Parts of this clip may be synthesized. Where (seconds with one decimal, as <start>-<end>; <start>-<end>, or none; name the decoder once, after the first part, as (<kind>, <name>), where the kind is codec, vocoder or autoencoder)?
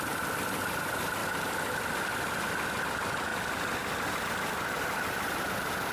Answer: none